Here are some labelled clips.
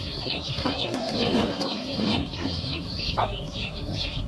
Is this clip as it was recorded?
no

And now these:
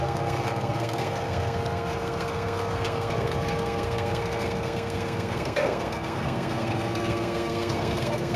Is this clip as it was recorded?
no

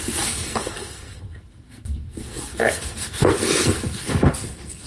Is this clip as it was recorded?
no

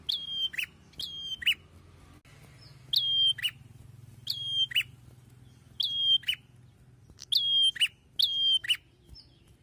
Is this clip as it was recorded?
yes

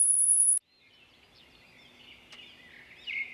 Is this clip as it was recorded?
yes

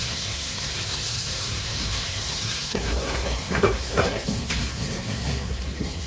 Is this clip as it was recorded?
no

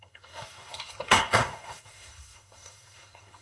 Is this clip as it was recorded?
no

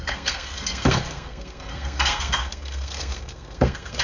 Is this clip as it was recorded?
no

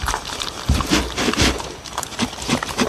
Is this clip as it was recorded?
yes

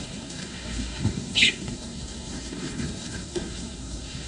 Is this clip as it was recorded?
no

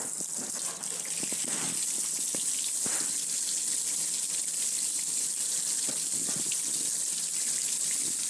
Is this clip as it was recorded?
yes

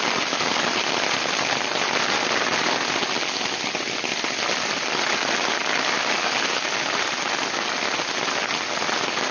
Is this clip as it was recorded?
yes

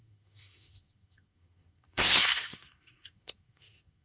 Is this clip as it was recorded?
no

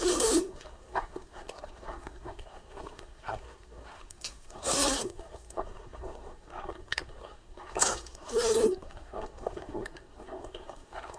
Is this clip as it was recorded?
no